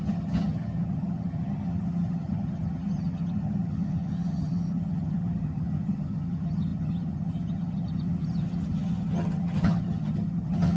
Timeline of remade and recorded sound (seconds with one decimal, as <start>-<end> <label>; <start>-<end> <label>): 0.0-10.8 remade